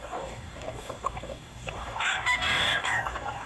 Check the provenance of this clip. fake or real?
fake